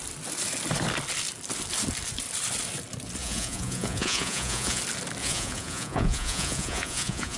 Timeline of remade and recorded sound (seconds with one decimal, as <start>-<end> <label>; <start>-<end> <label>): 0.0-3.2 recorded; 3.2-4.8 remade; 4.8-5.2 recorded; 5.2-7.4 remade